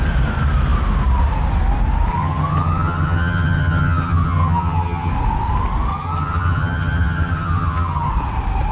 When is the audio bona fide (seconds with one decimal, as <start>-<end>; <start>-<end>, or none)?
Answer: 0.0-2.1; 5.1-5.9; 8.1-8.7